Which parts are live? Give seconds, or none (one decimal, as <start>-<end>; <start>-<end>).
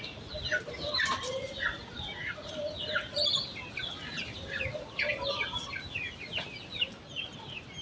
0.0-1.4; 2.5-7.8